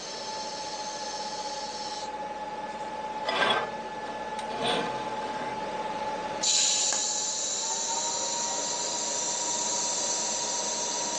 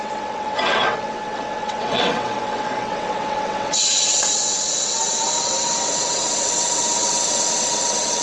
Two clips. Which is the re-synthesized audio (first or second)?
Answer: second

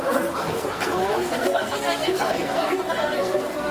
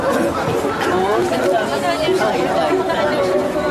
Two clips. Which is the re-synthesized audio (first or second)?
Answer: first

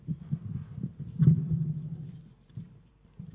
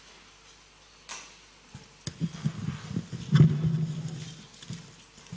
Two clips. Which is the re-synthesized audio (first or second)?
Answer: first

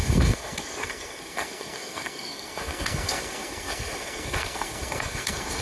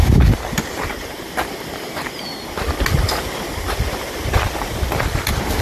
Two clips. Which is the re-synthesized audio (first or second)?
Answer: first